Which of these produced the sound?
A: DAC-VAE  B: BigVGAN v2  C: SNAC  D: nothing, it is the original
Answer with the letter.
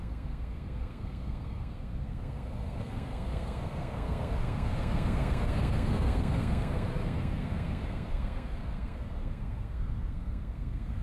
C